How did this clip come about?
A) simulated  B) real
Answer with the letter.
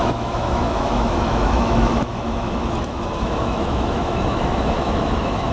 A